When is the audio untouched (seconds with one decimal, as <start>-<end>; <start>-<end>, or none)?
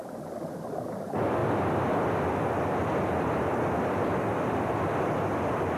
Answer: 0.0-5.8